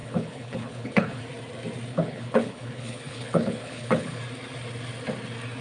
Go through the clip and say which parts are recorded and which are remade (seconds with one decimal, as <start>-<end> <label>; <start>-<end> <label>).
0.0-1.2 remade; 1.2-1.9 recorded; 1.9-4.2 remade; 4.2-5.6 recorded